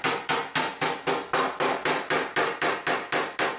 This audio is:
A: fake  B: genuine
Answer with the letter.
B